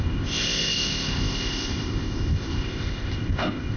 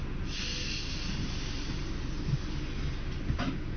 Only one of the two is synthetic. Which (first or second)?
first